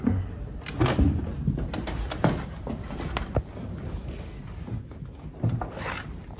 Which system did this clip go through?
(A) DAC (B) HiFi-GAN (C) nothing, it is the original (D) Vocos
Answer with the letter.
C